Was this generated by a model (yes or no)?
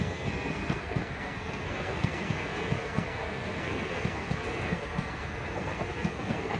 yes